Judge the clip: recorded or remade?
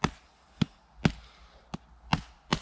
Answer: recorded